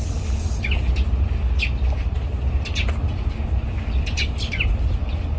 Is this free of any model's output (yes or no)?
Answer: yes